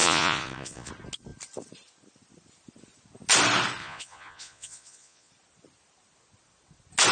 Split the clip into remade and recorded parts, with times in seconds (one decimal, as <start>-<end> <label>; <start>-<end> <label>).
0.0-0.9 remade; 0.9-3.8 recorded; 3.8-5.3 remade; 5.3-7.1 recorded